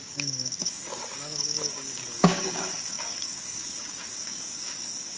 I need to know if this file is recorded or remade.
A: remade